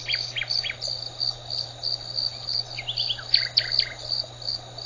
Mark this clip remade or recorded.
recorded